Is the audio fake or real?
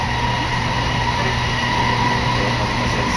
real